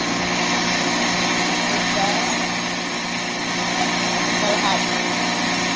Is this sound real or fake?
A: real